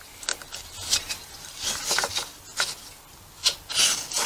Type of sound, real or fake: real